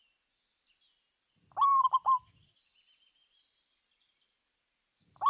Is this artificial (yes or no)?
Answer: no